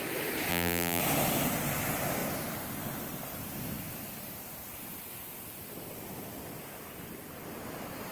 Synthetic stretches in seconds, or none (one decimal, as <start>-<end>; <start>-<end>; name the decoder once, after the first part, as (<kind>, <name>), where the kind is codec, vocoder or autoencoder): 0.5-1.0 (vocoder, BigVGAN v2)